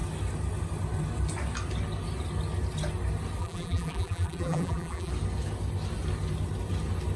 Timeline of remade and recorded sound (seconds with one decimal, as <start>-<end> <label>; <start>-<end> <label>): 0.0-3.4 recorded; 3.4-5.1 remade; 5.1-7.2 recorded